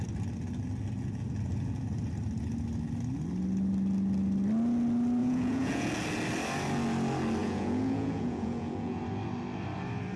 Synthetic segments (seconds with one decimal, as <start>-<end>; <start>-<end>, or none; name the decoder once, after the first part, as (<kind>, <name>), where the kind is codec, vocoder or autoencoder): 5.2-5.9 (vocoder, Vocos); 7.4-9.0